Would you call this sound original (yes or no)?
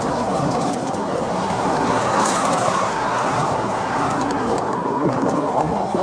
no